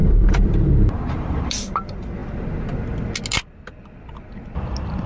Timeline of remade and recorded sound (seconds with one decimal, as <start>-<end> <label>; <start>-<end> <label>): 0.0-1.4 remade; 1.4-5.1 recorded